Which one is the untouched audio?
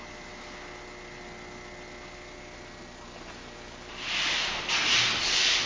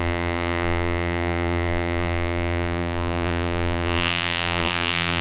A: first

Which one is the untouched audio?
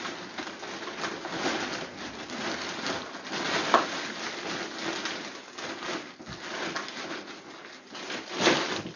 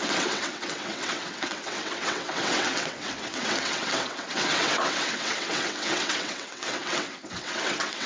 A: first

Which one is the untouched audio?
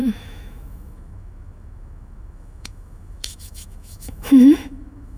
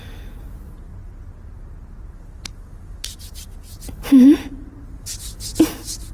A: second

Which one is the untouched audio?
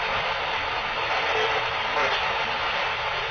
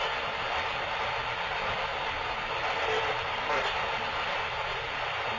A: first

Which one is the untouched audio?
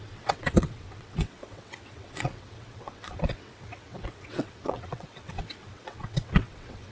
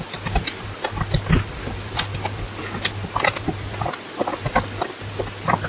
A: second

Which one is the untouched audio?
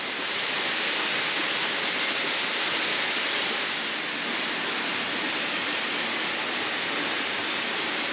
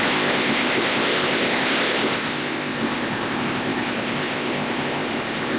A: first